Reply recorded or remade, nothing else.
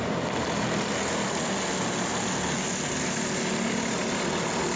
recorded